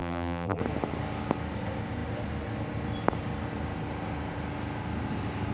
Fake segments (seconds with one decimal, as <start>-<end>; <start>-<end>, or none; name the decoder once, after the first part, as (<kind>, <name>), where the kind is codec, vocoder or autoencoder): 0.0-0.6 (vocoder, BigVGAN v2)